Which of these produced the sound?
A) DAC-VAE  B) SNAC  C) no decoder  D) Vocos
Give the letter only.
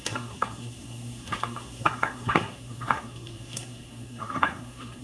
B